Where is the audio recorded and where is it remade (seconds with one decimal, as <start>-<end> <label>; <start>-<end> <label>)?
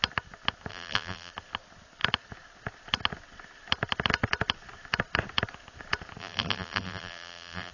0.0-0.7 recorded; 0.7-1.3 remade; 1.3-6.2 recorded; 6.2-7.7 remade